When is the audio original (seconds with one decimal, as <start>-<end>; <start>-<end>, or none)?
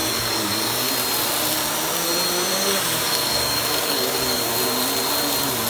0.9-2.5; 4.5-5.7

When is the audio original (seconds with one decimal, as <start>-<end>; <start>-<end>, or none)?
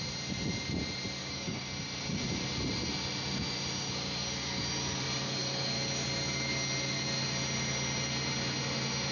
0.0-1.2; 1.7-9.1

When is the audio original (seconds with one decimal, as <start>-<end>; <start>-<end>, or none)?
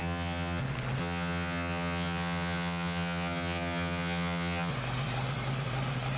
0.6-1.0; 4.7-6.2